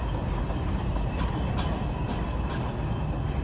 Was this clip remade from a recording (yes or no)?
no